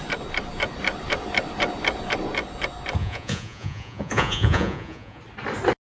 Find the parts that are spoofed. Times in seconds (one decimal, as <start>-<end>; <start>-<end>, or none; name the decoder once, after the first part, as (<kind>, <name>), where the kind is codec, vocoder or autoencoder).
3.0-5.2 (vocoder, Vocos)

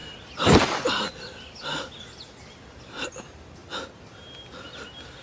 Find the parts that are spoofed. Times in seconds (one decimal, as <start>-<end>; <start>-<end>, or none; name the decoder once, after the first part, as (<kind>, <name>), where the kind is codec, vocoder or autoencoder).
none

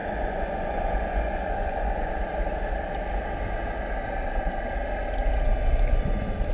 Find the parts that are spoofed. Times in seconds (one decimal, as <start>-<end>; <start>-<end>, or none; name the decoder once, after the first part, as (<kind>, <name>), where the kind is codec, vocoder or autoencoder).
0.0-2.1 (vocoder, Vocos)

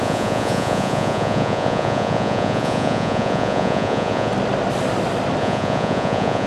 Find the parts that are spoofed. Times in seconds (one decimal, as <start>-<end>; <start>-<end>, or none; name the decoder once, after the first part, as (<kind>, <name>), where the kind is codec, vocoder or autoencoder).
0.0-4.3 (vocoder, Vocos); 5.4-6.5

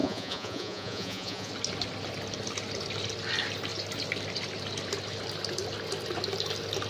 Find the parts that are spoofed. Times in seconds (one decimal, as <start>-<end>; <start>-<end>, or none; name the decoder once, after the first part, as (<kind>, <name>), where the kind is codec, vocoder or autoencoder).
0.0-1.5 (vocoder, Vocos)

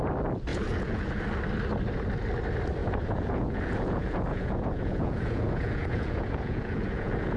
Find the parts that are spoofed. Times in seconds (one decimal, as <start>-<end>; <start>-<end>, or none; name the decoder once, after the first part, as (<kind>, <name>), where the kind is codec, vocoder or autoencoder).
0.5-1.2 (vocoder, Vocos); 2.8-7.4

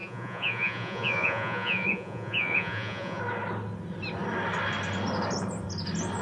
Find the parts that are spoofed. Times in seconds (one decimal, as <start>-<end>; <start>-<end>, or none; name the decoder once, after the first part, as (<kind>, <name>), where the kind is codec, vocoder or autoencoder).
0.0-3.2 (vocoder, Vocos)

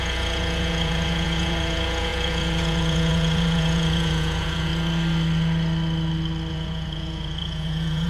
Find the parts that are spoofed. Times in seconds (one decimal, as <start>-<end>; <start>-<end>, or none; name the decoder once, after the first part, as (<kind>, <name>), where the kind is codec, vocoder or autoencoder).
0.0-4.7 (vocoder, Vocos); 6.5-8.1